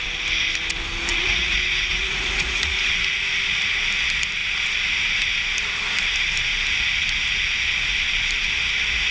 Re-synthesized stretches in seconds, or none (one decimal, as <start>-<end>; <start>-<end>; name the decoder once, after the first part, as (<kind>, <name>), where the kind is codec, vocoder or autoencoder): 1.1-2.9 (vocoder, Vocos)